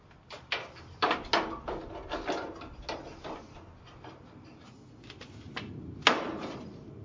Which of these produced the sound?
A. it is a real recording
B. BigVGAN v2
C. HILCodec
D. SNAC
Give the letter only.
A